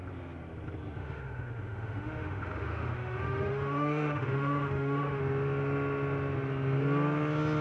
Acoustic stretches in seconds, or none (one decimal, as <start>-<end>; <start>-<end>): 0.0-1.0; 5.2-7.6